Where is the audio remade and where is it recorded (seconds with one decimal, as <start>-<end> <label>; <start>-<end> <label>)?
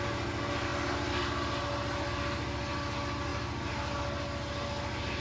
0.0-5.2 recorded